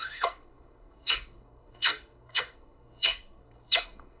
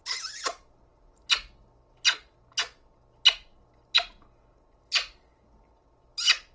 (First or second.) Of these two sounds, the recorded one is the second